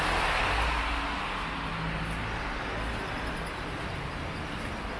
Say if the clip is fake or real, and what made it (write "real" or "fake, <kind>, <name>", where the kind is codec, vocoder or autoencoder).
real